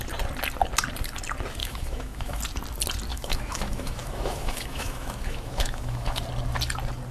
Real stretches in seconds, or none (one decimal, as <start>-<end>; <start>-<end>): 0.0-1.6; 2.4-3.1; 6.2-7.1